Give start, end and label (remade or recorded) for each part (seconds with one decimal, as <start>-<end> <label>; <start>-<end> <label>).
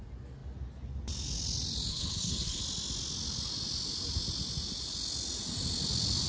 0.0-1.9 recorded; 1.9-2.6 remade; 2.6-6.3 recorded